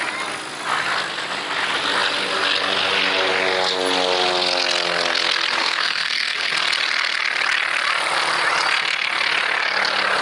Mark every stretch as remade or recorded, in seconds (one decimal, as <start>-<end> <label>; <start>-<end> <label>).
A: 0.0-5.6 recorded; 5.6-6.5 remade; 6.5-10.2 recorded